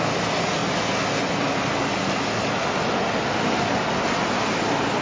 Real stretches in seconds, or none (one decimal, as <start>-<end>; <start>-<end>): 0.0-5.0